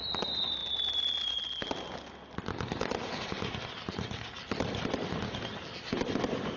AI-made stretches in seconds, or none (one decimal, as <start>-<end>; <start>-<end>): none